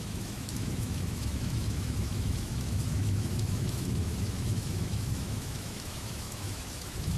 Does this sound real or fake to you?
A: fake